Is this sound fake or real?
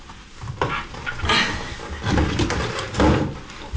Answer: real